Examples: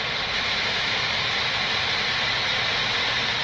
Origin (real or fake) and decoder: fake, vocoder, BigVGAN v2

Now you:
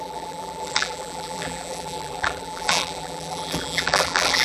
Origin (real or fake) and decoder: fake, vocoder, BigVGAN v2